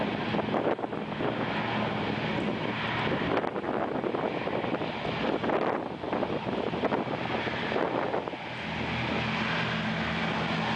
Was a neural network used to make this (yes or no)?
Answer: no